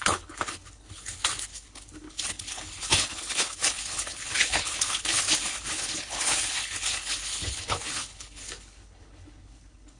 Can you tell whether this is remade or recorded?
remade